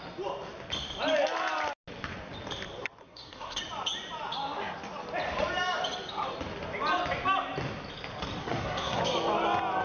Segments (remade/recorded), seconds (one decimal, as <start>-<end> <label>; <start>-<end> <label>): 0.0-3.0 recorded; 3.0-3.6 remade; 3.6-8.4 recorded; 8.4-9.0 remade; 9.0-9.8 recorded